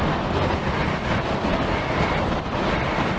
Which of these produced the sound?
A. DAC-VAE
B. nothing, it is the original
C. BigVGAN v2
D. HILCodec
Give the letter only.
B